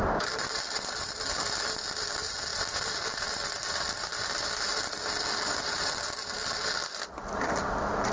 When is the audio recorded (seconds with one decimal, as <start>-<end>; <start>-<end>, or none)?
0.0-8.1